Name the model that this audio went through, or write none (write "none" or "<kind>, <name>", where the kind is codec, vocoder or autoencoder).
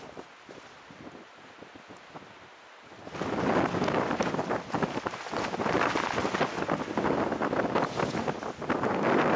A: none